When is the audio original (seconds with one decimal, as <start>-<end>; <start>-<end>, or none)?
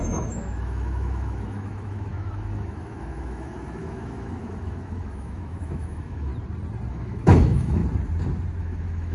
6.3-6.9; 7.8-8.6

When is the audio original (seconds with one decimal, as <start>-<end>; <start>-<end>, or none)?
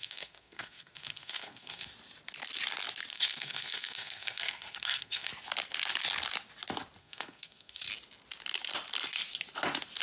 1.9-3.1; 5.3-7.0; 7.8-10.0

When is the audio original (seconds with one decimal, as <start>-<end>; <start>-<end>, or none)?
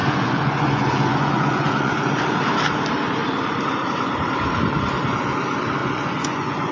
2.2-5.8